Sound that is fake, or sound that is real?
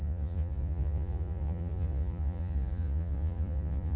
fake